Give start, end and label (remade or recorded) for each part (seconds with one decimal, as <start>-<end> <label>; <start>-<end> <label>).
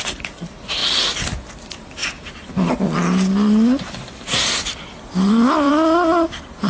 0.0-0.8 recorded; 0.8-1.5 remade; 1.5-4.9 recorded; 4.9-5.7 remade; 5.7-6.7 recorded